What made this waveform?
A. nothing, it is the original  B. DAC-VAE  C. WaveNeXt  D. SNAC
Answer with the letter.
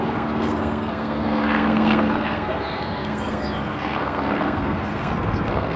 D